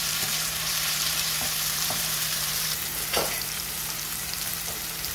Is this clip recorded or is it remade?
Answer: remade